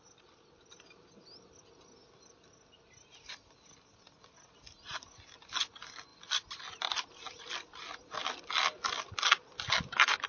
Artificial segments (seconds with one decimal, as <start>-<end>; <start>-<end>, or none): none

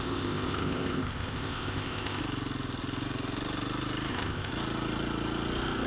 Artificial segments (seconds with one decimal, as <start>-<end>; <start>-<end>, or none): 0.0-2.2; 4.1-4.5

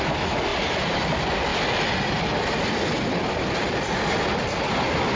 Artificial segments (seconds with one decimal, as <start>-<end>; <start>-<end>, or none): none

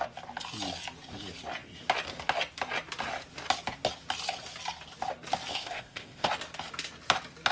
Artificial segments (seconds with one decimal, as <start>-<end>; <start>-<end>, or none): 5.5-6.3

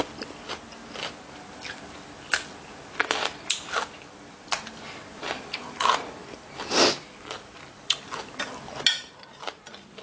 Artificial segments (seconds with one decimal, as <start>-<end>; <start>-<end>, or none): none